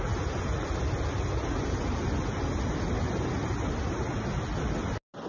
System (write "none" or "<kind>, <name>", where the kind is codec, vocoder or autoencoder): none